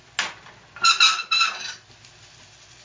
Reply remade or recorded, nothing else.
recorded